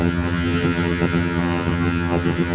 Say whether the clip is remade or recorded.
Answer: remade